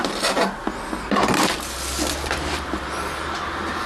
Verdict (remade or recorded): recorded